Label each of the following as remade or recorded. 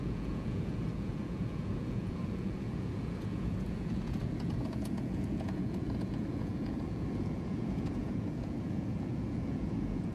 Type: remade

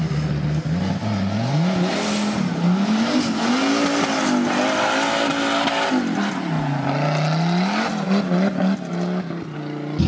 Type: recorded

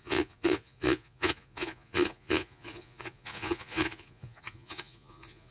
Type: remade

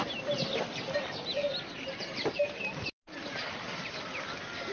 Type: recorded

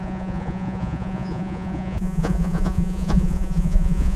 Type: remade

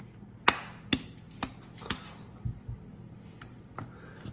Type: recorded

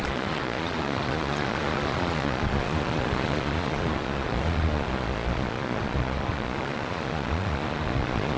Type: remade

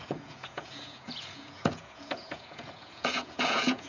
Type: remade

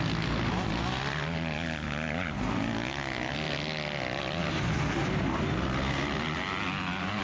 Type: recorded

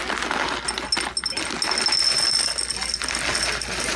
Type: recorded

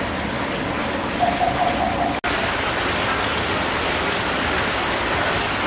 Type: recorded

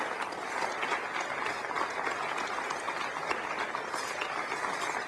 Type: recorded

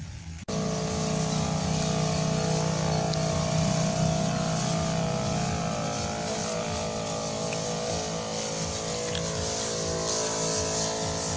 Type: recorded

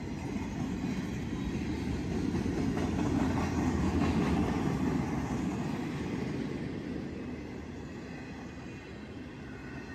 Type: recorded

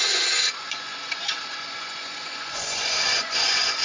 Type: remade